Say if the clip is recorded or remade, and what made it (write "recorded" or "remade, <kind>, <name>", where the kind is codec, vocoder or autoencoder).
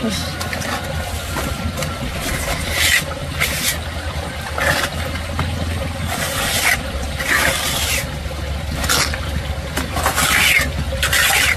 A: recorded